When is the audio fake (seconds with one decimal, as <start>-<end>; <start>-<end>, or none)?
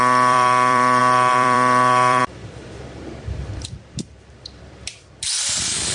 0.0-5.9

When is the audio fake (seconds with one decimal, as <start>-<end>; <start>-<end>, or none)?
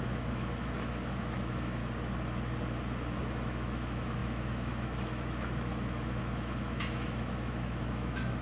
0.0-1.8; 3.2-8.4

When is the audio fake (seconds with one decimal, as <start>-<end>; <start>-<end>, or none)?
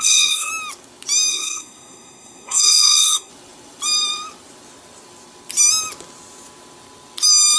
0.0-0.5; 1.3-3.3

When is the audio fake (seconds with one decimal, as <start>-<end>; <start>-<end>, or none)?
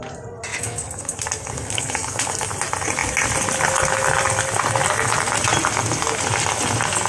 0.5-2.5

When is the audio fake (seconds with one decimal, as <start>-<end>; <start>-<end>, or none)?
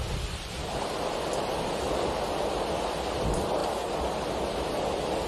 none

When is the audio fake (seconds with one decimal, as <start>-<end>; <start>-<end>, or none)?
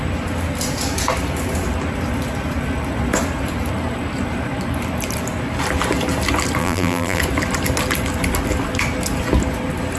6.6-7.2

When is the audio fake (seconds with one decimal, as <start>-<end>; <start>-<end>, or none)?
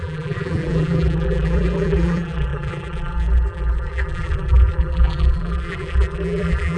0.0-6.8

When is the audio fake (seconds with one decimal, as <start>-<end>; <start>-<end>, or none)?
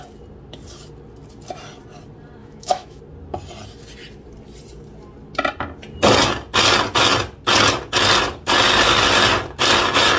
2.4-3.0